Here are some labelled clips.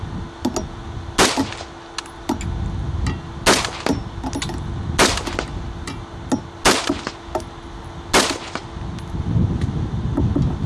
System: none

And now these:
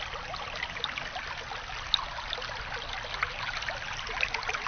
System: none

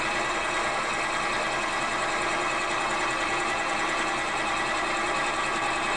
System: none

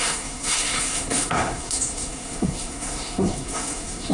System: codec, SNAC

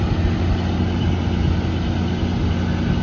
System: none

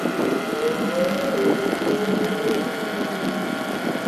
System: none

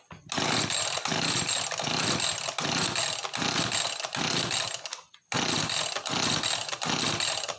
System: none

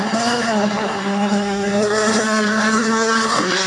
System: codec, SNAC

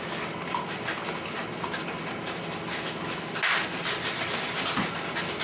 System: none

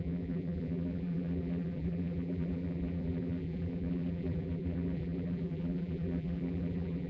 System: vocoder, BigVGAN v2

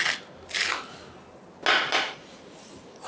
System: none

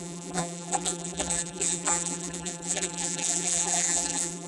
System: vocoder, BigVGAN v2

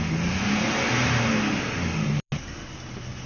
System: none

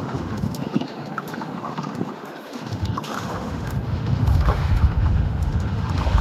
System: autoencoder, DAC-VAE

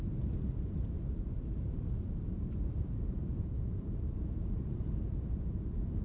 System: vocoder, BigVGAN v2